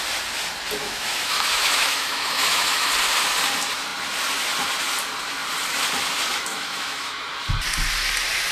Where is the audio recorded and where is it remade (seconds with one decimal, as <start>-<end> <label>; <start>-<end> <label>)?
0.0-0.8 recorded; 0.8-2.9 remade; 2.9-6.5 recorded; 6.5-7.3 remade; 7.3-8.5 recorded